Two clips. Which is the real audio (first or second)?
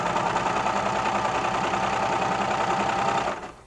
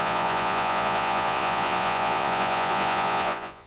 first